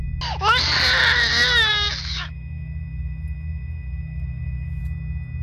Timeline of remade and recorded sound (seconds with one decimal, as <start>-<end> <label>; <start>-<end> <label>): 0.0-1.7 recorded; 1.7-4.8 remade; 4.8-5.4 recorded